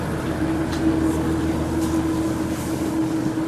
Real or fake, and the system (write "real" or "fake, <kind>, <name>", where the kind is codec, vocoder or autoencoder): real